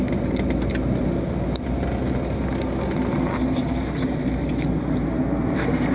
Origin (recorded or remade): recorded